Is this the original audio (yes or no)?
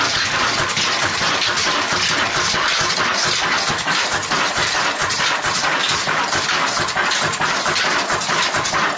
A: yes